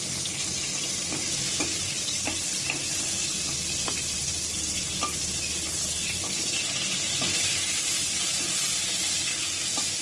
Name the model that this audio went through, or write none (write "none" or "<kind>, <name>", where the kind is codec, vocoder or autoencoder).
none